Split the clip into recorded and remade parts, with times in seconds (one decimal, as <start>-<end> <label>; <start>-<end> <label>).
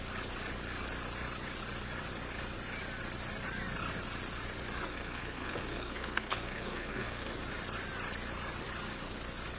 0.0-4.9 recorded; 4.9-7.3 remade; 7.3-9.6 recorded